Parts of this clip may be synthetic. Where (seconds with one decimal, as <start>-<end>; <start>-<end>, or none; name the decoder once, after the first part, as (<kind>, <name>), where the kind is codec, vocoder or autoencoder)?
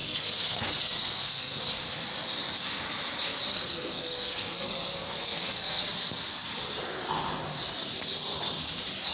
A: 0.0-1.6 (codec, SNAC); 3.5-5.8